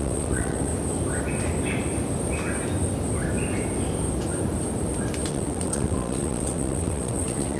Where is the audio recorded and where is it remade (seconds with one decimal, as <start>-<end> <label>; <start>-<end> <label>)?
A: 0.0-0.7 remade; 0.7-5.3 recorded; 5.3-7.6 remade